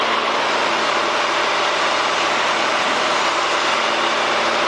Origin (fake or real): real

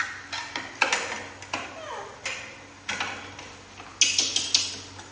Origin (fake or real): real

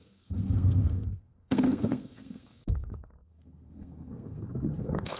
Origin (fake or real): fake